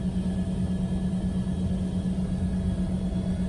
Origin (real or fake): real